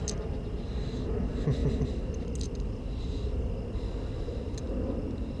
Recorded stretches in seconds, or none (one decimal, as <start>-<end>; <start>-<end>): 0.0-5.4